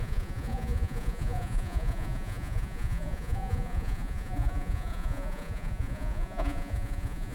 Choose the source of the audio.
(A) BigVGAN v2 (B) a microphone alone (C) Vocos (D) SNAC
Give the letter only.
C